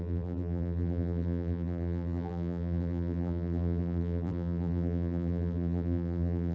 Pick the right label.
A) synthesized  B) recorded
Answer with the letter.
A